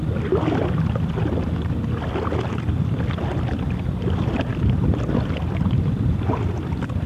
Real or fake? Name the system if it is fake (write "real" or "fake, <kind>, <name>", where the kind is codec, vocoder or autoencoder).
real